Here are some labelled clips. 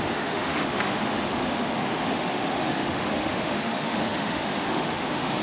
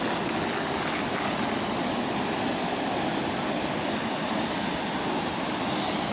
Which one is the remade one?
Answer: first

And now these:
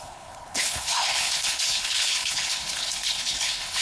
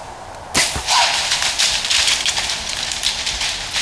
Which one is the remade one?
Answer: first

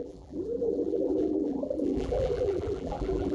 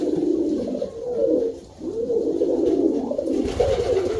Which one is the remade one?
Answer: first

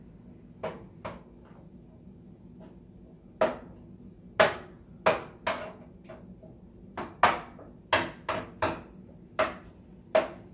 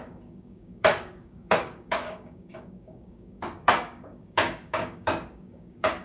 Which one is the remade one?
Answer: second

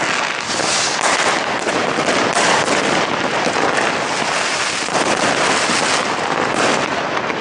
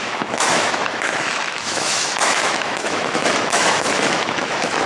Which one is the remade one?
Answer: second